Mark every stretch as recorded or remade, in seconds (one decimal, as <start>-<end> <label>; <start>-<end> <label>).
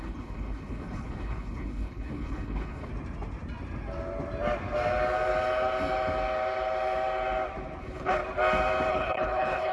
0.0-2.9 remade; 2.9-7.8 recorded; 7.8-8.2 remade; 8.2-8.9 recorded; 8.9-9.7 remade